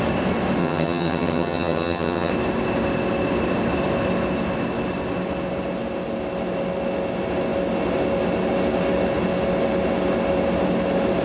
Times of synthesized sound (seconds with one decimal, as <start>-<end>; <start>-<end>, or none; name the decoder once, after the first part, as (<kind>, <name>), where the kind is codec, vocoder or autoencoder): 0.6-2.3 (vocoder, HiFi-GAN)